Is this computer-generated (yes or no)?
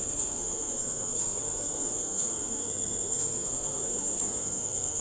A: yes